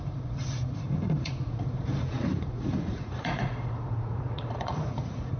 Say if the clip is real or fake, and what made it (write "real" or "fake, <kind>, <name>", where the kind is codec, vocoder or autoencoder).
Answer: fake, vocoder, Vocos